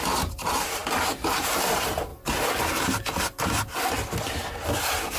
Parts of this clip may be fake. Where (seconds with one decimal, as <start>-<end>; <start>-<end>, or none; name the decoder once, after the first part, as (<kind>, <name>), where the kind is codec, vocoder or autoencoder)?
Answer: none